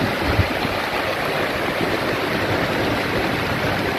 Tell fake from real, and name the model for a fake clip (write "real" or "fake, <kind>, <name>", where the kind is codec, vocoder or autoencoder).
real